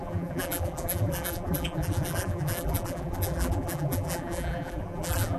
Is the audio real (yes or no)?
no